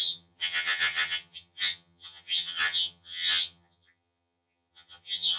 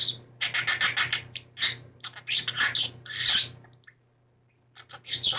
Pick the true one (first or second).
second